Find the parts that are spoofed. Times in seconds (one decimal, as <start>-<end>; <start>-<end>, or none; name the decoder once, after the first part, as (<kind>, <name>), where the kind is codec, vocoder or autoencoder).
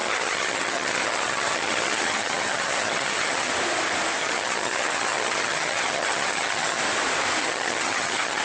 0.0-3.5 (vocoder, HiFi-GAN); 4.2-6.8; 7.4-8.4